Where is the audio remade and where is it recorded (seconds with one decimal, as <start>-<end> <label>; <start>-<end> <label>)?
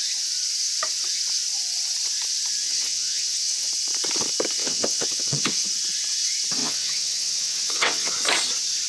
0.0-2.6 recorded; 2.6-3.7 remade; 3.7-4.6 recorded; 4.6-5.5 remade; 5.5-6.6 recorded; 6.6-8.1 remade; 8.1-8.9 recorded